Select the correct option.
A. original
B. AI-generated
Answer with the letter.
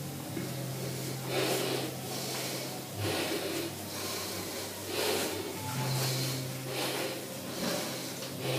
A